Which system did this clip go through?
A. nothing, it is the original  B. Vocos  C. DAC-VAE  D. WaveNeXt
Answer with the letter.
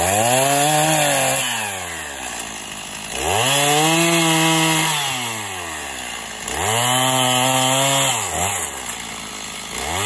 A